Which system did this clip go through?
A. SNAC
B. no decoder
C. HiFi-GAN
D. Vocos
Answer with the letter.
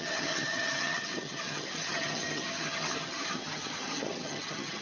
C